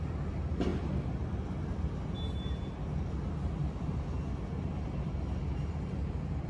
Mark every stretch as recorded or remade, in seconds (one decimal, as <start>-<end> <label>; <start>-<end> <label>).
0.0-6.5 recorded